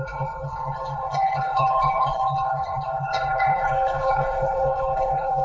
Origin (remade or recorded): remade